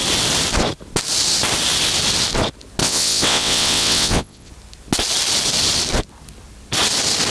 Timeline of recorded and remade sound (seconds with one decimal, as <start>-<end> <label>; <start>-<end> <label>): 0.0-2.8 recorded; 2.8-4.5 remade; 4.5-7.3 recorded